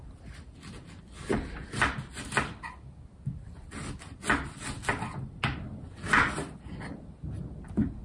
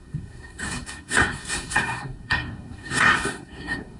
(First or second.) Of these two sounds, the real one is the first